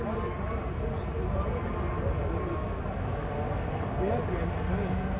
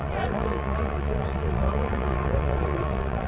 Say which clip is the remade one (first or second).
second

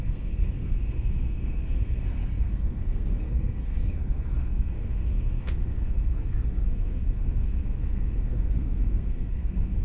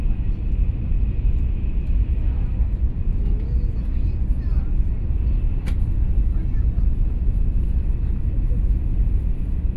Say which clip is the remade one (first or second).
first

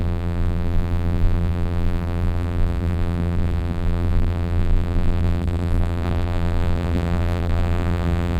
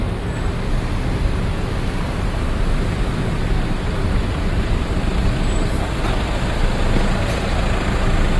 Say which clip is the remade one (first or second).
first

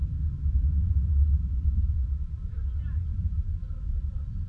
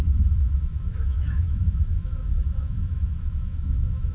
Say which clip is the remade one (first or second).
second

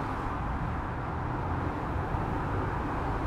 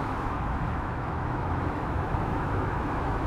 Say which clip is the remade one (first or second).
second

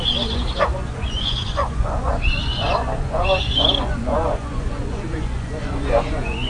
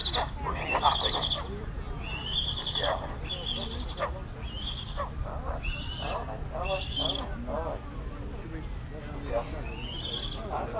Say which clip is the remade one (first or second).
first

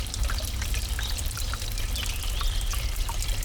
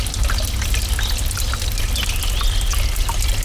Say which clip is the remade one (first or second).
first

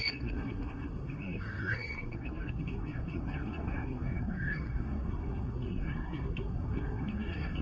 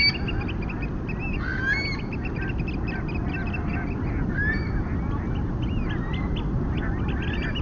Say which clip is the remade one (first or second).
first